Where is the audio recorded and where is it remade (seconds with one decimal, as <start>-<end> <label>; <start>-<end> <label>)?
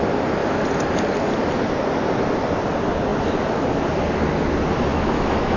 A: 0.0-4.9 recorded; 4.9-5.6 remade